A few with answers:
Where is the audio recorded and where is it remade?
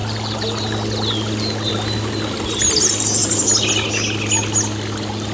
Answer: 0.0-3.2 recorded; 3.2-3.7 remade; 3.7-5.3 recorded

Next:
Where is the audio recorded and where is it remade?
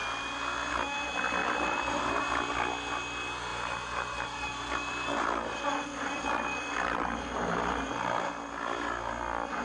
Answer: 0.0-1.4 recorded; 1.4-2.2 remade; 2.2-3.5 recorded; 3.5-8.3 remade; 8.3-9.6 recorded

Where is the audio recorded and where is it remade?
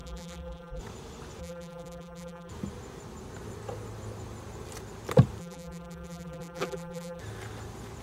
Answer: 0.0-0.8 remade; 0.8-1.4 recorded; 1.4-2.5 remade; 2.5-5.4 recorded; 5.4-7.2 remade; 7.2-8.0 recorded